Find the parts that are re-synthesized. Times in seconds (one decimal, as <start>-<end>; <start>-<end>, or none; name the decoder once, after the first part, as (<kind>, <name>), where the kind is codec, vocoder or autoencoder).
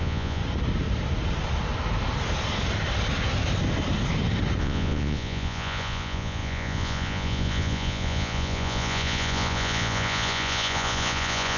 0.0-0.4 (vocoder, Vocos); 4.6-11.6